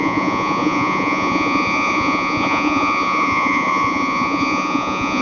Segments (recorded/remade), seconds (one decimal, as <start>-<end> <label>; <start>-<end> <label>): 0.0-5.2 remade